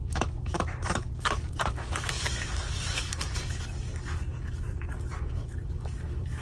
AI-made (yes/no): yes